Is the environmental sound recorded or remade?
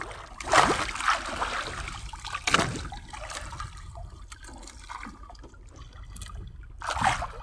recorded